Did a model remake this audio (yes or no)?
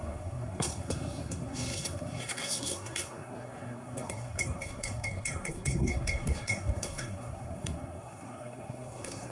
yes